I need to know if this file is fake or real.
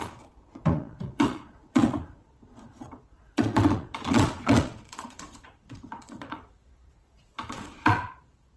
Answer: fake